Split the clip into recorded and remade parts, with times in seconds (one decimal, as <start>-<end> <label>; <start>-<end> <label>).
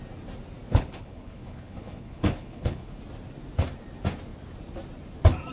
0.0-0.7 recorded; 0.7-3.0 remade; 3.0-5.5 recorded